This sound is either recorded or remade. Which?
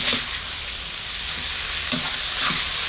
recorded